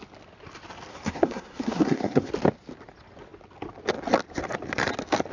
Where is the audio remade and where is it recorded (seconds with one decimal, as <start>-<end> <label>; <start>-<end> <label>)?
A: 0.0-0.9 recorded; 0.9-2.3 remade; 2.3-5.3 recorded